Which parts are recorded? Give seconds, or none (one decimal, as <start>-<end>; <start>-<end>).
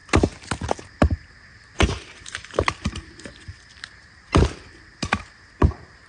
0.0-3.7; 4.4-6.1